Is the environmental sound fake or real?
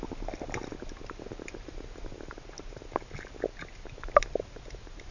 real